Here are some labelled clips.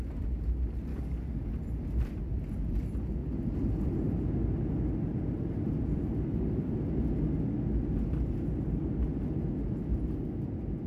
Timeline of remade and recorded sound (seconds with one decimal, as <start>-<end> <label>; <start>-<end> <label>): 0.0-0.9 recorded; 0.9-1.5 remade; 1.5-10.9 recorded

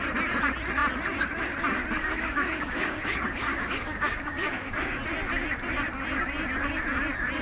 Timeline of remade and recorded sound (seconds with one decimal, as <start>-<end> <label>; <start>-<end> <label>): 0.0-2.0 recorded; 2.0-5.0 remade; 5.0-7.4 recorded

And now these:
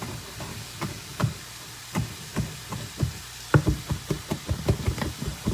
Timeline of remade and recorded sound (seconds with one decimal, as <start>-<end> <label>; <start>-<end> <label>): 0.0-0.5 recorded; 0.5-1.4 remade; 1.4-5.5 recorded